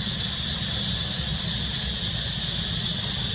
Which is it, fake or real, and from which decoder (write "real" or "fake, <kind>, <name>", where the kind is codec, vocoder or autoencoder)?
real